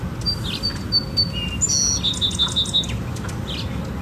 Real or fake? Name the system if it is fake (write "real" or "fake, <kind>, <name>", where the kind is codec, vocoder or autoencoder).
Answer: real